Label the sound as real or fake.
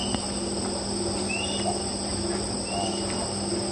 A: real